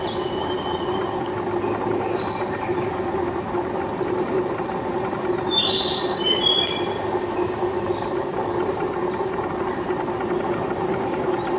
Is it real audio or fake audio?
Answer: real